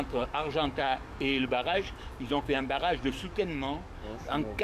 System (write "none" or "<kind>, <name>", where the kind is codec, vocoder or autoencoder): codec, DAC